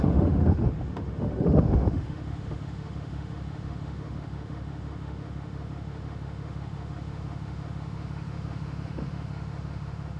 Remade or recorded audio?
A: remade